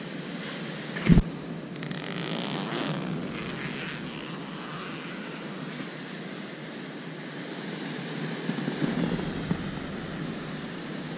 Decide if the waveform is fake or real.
real